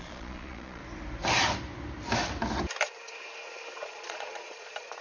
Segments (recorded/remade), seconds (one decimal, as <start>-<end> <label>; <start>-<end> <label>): 0.0-0.8 remade; 0.8-3.8 recorded; 3.8-5.0 remade